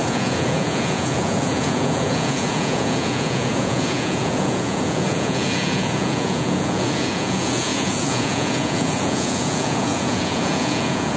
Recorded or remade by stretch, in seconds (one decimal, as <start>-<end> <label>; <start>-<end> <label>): 0.0-11.2 remade